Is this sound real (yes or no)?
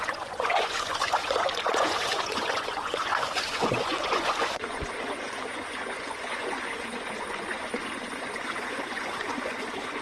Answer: no